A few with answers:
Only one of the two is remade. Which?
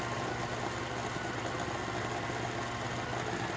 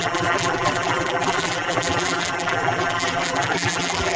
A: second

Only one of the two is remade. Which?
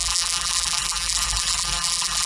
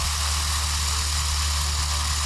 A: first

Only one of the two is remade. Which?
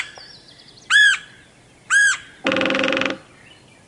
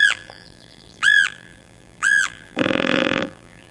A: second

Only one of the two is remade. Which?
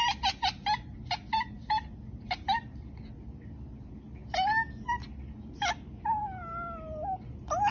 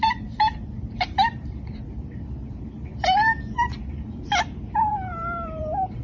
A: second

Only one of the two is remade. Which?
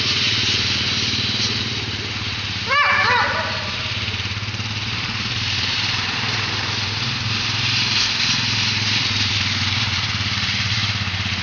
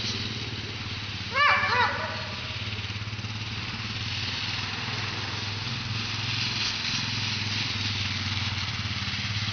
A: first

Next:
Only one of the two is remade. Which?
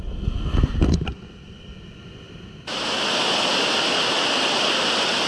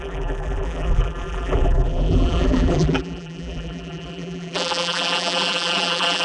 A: second